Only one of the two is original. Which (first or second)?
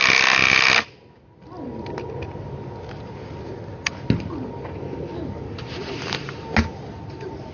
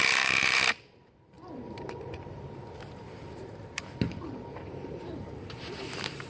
first